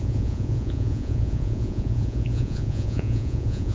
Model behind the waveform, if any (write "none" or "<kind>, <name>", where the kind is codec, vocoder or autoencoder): vocoder, Vocos